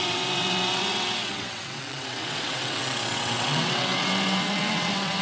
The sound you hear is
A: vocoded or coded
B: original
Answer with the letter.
A